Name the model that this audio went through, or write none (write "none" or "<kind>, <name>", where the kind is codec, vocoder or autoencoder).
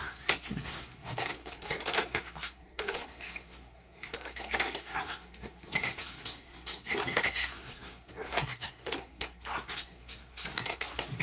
codec, SNAC